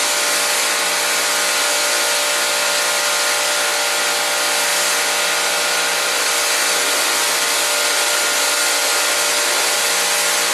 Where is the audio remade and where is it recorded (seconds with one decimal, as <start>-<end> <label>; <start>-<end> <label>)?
0.0-10.5 recorded